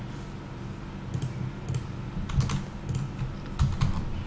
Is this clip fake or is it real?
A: real